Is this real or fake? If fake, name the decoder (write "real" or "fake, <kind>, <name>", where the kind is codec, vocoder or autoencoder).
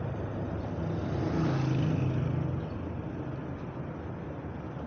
real